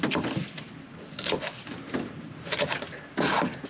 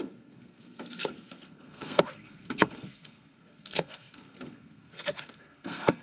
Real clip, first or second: first